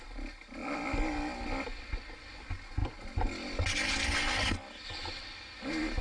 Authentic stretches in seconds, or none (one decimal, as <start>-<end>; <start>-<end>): 0.0-6.0